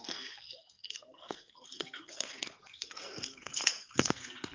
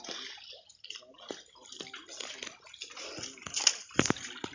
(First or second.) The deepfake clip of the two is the first